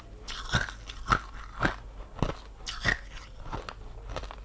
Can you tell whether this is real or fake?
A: real